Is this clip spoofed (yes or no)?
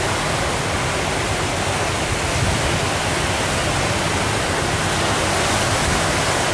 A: no